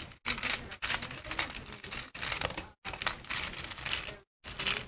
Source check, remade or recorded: recorded